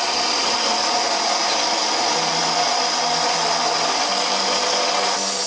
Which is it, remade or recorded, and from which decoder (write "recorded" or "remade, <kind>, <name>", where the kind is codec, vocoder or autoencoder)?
recorded